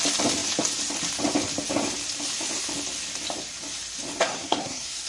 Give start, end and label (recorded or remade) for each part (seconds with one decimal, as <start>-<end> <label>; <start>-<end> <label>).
0.0-4.2 recorded; 4.2-5.1 remade

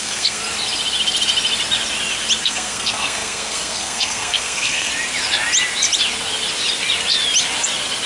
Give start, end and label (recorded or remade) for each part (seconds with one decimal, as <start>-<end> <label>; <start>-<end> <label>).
0.0-0.4 remade; 0.4-2.4 recorded; 2.4-4.9 remade; 4.9-8.1 recorded

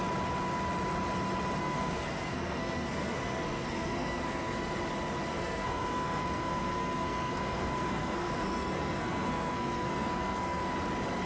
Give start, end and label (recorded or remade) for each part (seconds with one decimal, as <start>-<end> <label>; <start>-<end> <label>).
0.0-1.6 recorded; 1.6-4.8 remade; 4.8-5.3 recorded; 5.3-10.6 remade; 10.6-11.3 recorded

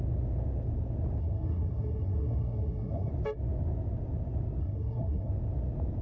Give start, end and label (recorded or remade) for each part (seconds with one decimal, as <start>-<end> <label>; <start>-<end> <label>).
0.0-1.2 recorded; 1.2-3.1 remade; 3.1-4.6 recorded; 4.6-5.3 remade; 5.3-6.0 recorded

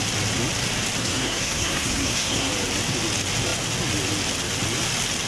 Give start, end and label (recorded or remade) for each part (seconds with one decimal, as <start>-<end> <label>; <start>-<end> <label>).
0.0-1.0 recorded; 1.0-2.5 remade; 2.5-5.3 recorded

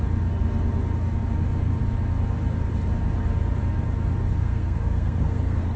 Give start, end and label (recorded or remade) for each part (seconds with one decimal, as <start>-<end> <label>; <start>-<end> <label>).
0.0-4.4 recorded; 4.4-5.8 remade